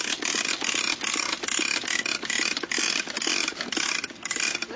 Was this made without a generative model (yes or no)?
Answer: yes